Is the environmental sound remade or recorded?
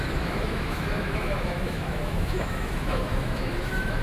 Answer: remade